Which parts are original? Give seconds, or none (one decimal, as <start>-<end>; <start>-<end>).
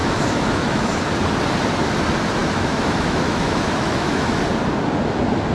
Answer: 0.9-2.4; 4.4-5.5